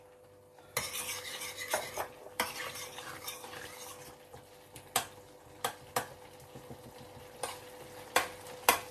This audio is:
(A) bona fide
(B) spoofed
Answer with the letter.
A